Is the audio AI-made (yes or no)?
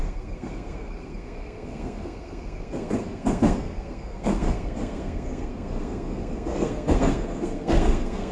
yes